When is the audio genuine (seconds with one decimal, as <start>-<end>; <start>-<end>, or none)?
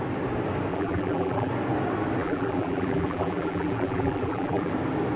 0.0-0.7; 1.5-2.2; 4.7-5.2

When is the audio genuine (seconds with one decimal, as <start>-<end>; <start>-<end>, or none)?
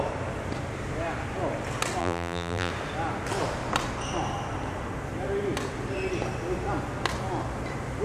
0.0-2.0; 2.7-8.0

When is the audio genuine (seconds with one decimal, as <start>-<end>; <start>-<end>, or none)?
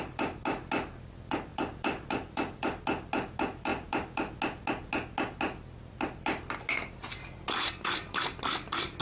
0.0-1.5; 2.8-9.0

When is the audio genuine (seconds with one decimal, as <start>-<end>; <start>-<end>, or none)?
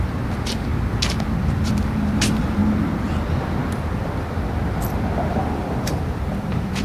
0.7-1.4; 2.6-5.3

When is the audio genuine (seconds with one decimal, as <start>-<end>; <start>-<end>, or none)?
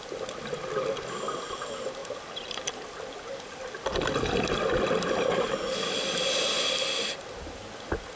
0.0-2.0; 2.6-8.2